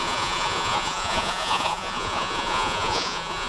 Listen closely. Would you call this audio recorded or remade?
remade